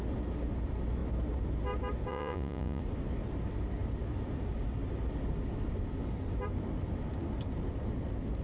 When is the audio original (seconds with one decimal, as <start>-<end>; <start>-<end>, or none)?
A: 0.0-2.1; 2.8-8.4